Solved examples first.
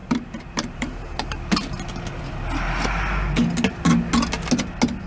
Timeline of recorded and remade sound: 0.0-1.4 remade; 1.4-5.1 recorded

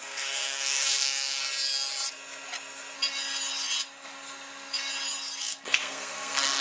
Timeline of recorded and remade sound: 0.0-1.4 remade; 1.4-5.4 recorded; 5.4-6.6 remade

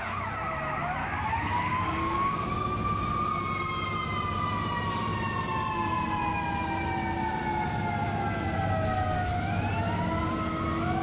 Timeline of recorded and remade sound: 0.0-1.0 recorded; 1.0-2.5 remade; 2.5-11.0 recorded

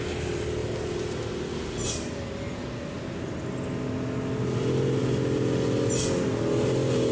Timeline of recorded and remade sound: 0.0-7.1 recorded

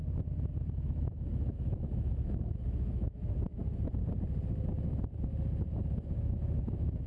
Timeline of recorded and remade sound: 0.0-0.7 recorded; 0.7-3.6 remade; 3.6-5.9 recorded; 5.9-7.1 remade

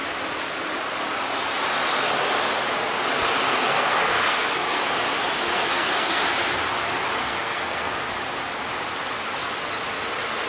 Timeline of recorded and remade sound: 0.0-3.4 recorded; 3.4-4.8 remade; 4.8-5.5 recorded; 5.5-6.2 remade; 6.2-7.2 recorded; 7.2-8.0 remade; 8.0-10.5 recorded

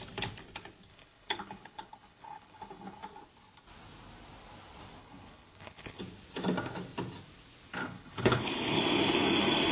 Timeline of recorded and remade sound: 0.0-0.9 recorded; 0.9-3.0 remade; 3.0-5.0 recorded; 5.0-6.0 remade; 6.0-7.8 recorded; 7.8-8.8 remade; 8.8-9.7 recorded

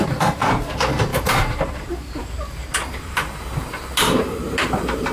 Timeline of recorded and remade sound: 0.0-2.6 remade; 2.6-3.1 recorded; 3.1-5.1 remade